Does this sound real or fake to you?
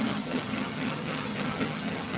fake